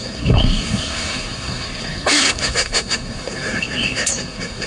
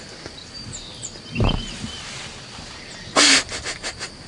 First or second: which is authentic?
second